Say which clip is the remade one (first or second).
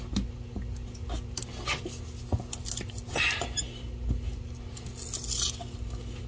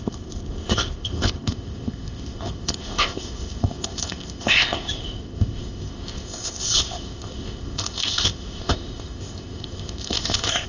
second